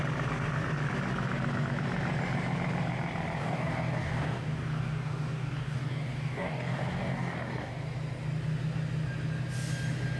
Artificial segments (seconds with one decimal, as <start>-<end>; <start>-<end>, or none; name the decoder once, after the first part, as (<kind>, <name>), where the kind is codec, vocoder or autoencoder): 3.4-7.7 (codec, DAC)